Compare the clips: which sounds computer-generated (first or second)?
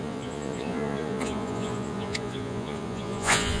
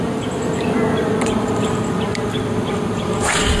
first